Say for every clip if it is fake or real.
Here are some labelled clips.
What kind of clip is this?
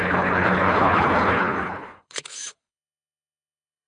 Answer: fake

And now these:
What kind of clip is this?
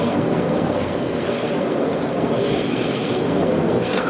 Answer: fake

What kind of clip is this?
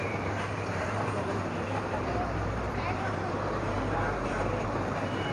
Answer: fake